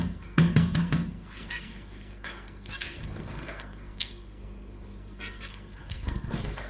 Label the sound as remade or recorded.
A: remade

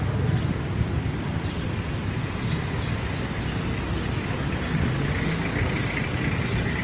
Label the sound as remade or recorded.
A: recorded